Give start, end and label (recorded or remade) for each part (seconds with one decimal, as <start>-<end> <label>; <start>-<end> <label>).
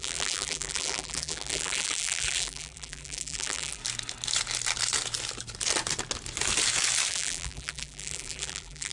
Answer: 0.0-3.8 remade; 3.8-7.1 recorded; 7.1-8.9 remade